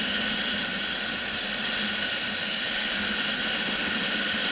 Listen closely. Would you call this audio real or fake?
real